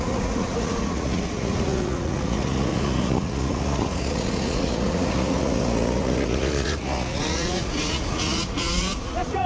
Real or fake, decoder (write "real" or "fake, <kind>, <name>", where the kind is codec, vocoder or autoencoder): fake, vocoder, Vocos